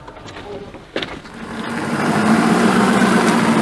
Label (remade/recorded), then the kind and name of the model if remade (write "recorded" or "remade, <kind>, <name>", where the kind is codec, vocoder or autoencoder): recorded